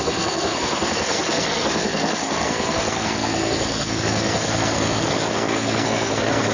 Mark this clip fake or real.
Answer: fake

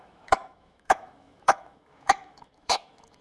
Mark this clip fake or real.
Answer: fake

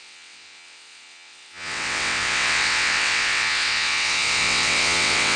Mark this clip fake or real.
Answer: fake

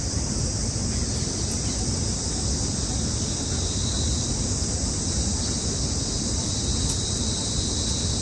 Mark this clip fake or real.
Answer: real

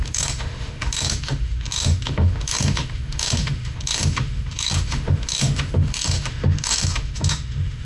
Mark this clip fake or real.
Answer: fake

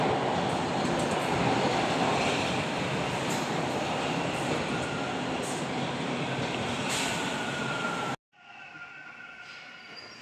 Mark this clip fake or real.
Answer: real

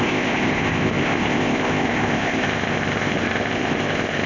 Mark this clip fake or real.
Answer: fake